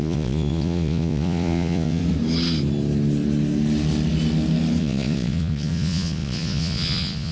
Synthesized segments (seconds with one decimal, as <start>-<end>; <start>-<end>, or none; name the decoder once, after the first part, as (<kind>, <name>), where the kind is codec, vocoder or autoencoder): 0.0-2.0 (vocoder, Vocos); 4.8-7.3